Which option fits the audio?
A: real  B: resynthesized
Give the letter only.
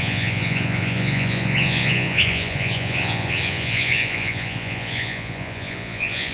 B